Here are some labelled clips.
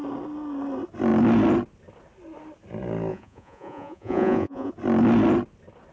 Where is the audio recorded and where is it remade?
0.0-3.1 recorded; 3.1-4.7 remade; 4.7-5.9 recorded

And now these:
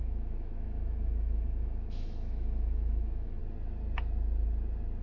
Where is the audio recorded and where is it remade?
0.0-3.4 remade; 3.4-5.0 recorded

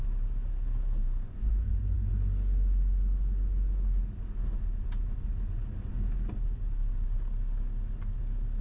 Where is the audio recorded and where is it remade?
0.0-1.0 recorded; 1.0-2.1 remade; 2.1-8.6 recorded

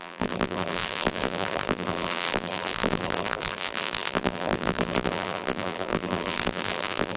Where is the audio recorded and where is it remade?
0.0-7.2 remade

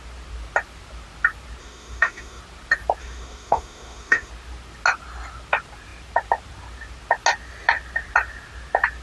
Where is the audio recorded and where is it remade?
0.0-1.6 recorded; 1.6-2.4 remade; 2.4-3.0 recorded; 3.0-4.3 remade; 4.3-9.0 recorded